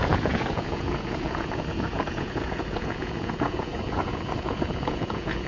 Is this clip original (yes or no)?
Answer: no